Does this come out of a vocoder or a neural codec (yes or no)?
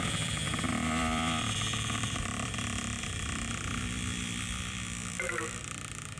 yes